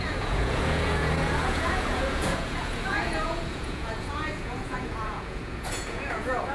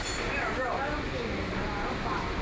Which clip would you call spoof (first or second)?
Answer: first